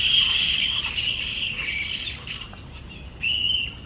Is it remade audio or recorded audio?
recorded